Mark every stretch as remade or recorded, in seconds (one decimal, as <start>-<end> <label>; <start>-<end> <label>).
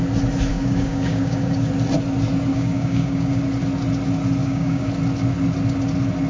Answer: 0.0-0.5 recorded; 0.5-1.7 remade; 1.7-2.5 recorded; 2.5-3.4 remade; 3.4-4.4 recorded; 4.4-4.9 remade; 4.9-6.3 recorded